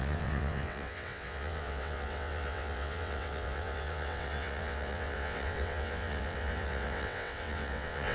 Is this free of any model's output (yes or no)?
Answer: no